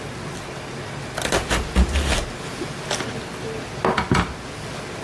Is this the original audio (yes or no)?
yes